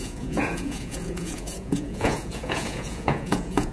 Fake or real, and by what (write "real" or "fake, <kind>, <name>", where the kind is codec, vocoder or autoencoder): fake, vocoder, Vocos